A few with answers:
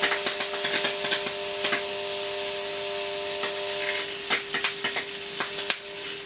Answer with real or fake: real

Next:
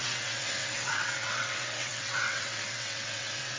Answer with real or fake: fake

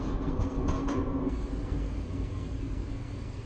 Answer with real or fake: fake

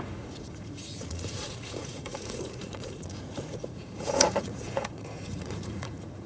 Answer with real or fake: fake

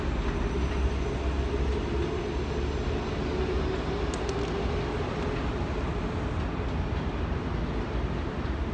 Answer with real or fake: real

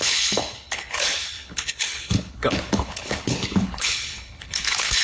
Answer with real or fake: fake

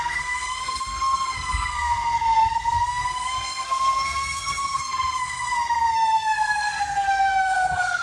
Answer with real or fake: fake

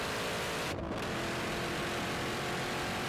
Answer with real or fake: real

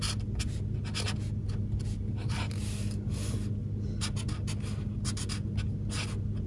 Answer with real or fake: real